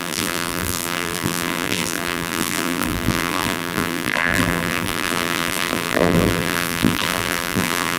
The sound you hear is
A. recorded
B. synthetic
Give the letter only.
B